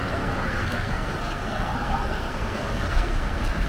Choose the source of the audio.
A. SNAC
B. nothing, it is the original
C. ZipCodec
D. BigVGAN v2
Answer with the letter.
A